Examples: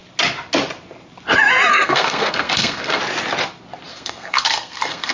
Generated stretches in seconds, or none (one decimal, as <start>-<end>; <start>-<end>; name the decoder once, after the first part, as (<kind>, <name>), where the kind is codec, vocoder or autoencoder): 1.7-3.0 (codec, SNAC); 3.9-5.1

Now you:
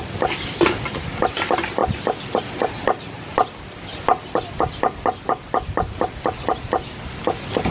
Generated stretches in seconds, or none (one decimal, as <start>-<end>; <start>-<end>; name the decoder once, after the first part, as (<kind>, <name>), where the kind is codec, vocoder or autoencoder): none

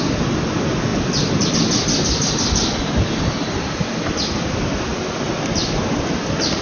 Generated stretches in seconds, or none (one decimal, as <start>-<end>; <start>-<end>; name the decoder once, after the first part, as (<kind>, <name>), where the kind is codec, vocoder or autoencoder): none